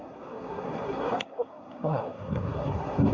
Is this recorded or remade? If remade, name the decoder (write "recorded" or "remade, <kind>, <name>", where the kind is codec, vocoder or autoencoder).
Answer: remade, codec, SNAC